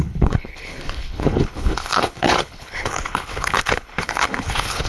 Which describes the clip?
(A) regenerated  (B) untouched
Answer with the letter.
A